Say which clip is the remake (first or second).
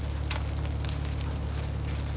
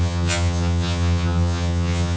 second